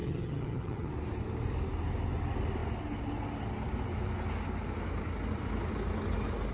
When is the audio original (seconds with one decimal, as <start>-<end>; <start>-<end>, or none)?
0.9-6.5